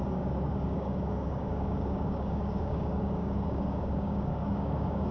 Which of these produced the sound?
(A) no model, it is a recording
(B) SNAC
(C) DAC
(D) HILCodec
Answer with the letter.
C